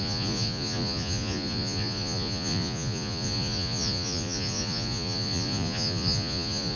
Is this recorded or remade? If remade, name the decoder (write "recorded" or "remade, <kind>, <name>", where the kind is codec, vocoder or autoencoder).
remade, vocoder, Vocos